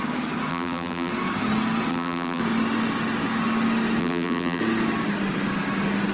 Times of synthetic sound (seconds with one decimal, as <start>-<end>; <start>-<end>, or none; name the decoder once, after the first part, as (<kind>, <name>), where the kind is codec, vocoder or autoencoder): 0.5-1.1 (vocoder, BigVGAN v2); 1.9-2.4; 4.0-4.6